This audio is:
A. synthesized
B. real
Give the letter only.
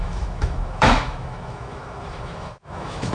A